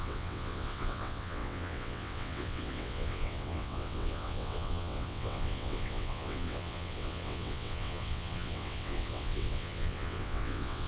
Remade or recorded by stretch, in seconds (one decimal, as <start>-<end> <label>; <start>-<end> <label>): 0.0-10.9 remade